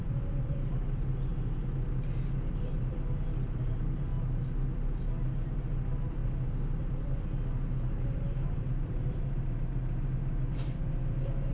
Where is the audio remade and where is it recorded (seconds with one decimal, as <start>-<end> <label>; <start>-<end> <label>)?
0.0-1.3 remade; 1.3-2.7 recorded; 2.7-4.1 remade; 4.1-5.2 recorded; 5.2-11.5 remade